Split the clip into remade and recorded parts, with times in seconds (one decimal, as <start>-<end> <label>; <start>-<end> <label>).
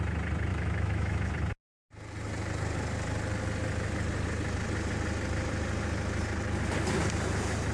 0.0-0.5 recorded; 0.5-1.3 remade; 1.3-7.7 recorded